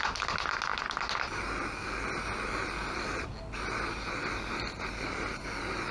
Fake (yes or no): no